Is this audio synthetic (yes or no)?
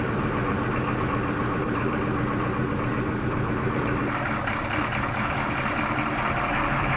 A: yes